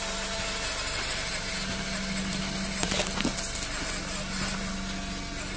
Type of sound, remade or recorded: recorded